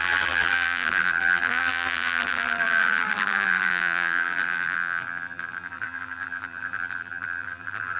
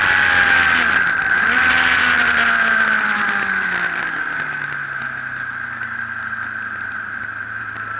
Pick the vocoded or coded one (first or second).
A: first